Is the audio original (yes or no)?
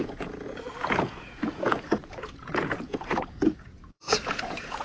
no